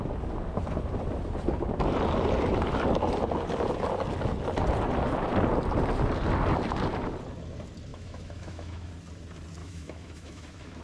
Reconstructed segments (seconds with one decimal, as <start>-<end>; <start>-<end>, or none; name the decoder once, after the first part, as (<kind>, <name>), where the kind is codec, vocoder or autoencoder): 7.9-8.9 (autoencoder, DAC-VAE); 9.6-10.8

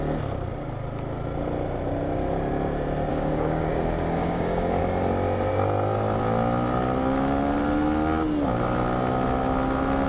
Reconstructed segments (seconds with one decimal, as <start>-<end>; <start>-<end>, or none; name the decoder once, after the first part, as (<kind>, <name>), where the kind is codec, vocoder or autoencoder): 3.1-4.8 (codec, DAC)

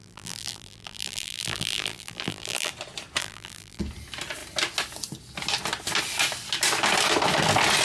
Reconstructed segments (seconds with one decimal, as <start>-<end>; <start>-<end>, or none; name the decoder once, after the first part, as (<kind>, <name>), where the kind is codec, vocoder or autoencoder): 0.0-2.7 (vocoder, BigVGAN v2); 3.2-3.8

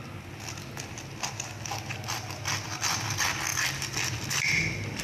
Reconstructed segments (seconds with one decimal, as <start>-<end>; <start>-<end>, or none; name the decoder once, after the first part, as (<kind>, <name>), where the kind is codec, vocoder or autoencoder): 1.9-2.5 (vocoder, BigVGAN v2); 3.5-5.0

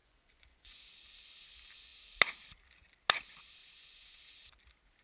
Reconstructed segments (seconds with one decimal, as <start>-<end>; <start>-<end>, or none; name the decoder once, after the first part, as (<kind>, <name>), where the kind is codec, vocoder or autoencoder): 0.0-0.9 (vocoder, Vocos); 3.6-4.2

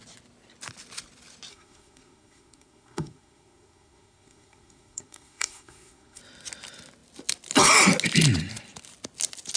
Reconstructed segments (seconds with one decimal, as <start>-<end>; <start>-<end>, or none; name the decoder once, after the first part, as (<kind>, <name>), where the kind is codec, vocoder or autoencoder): 1.5-6.2 (codec, SNAC)

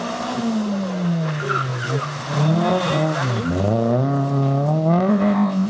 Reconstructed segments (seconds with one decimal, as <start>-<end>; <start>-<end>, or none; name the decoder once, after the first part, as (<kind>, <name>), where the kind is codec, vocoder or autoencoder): 5.1-5.7 (codec, ZipCodec)